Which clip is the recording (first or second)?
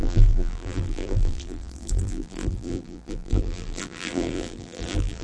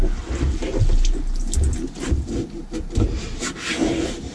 second